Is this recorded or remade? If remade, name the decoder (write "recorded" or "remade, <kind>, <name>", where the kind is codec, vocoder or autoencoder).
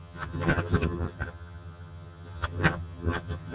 remade, vocoder, HiFi-GAN